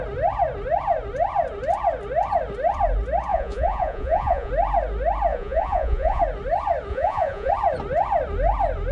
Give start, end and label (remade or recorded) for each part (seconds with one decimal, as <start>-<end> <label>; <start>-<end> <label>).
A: 0.0-3.3 recorded; 3.3-4.5 remade; 4.5-5.3 recorded; 5.3-6.2 remade; 6.2-6.9 recorded; 6.9-7.5 remade; 7.5-8.9 recorded